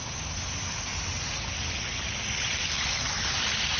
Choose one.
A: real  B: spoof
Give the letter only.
A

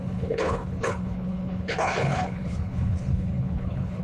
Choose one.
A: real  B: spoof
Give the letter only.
B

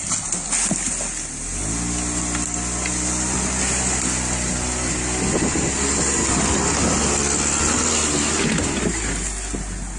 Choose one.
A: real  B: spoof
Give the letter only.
A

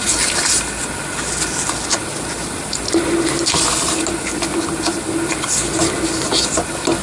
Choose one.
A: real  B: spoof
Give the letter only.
A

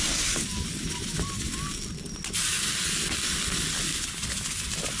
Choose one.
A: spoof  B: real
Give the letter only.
B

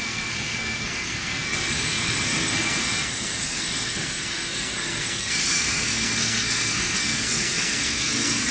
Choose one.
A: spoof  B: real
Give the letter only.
A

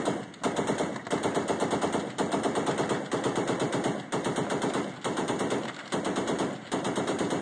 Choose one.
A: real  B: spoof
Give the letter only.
A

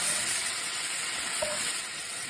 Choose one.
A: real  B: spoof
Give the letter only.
B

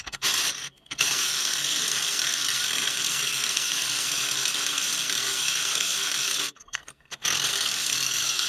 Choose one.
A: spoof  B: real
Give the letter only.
A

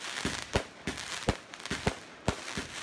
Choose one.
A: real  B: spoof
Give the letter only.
A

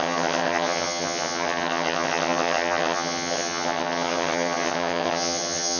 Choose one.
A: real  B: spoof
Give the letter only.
B